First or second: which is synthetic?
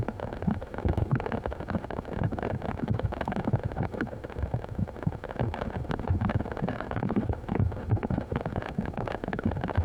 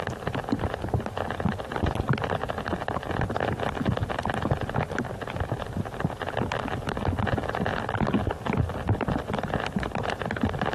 first